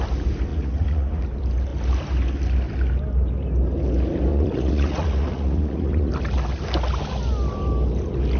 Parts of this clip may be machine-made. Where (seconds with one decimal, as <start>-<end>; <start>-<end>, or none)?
0.5-1.2; 4.3-6.1